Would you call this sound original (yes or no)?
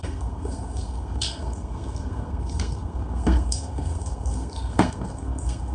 no